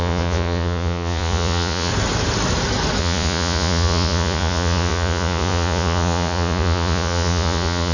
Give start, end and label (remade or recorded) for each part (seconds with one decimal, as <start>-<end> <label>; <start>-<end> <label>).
0.0-1.9 remade; 1.9-3.0 recorded; 3.0-7.9 remade